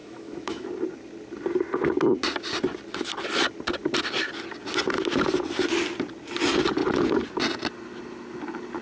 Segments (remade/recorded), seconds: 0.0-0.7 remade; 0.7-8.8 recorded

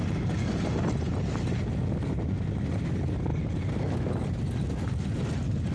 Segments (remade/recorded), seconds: 0.0-5.7 recorded

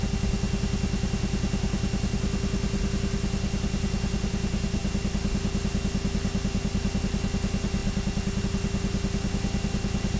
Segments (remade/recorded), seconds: 0.0-10.2 recorded